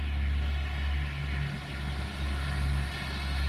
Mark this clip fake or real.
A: real